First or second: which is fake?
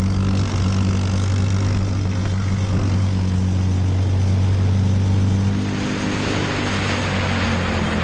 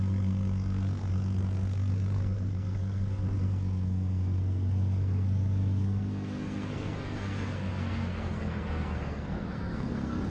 second